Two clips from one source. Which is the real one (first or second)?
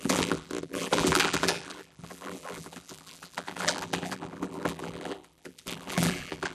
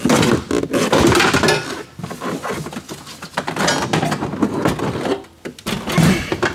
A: second